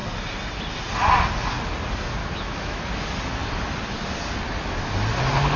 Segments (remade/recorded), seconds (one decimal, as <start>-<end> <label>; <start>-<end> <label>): 0.0-2.2 recorded; 2.2-2.8 remade; 2.8-5.6 recorded